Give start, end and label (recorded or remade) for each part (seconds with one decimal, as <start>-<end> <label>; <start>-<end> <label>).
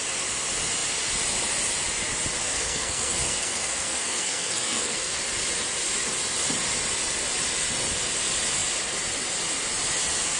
0.0-2.4 recorded; 2.4-5.2 remade; 5.2-10.4 recorded